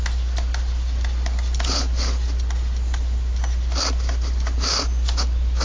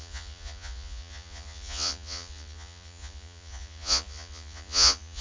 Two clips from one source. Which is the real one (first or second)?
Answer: first